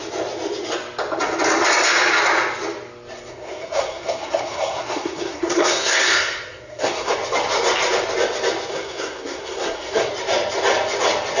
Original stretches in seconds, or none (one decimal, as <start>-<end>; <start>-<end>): 0.0-3.3; 7.1-8.7; 10.1-11.4